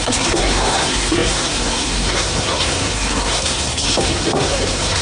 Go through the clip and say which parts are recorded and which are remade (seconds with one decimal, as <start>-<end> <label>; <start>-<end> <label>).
0.0-5.0 remade